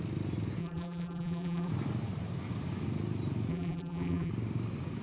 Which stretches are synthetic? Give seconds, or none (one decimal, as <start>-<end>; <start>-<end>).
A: 0.6-1.7; 3.5-4.3